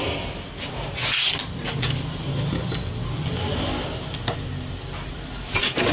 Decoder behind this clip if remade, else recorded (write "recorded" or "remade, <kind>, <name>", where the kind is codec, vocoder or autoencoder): recorded